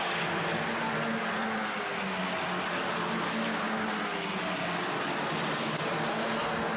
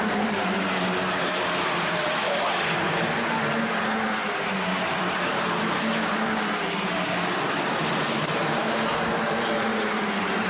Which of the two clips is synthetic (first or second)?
second